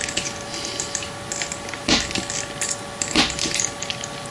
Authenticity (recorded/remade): recorded